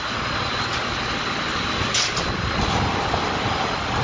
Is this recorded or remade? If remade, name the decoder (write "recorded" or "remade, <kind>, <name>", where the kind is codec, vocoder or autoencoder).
recorded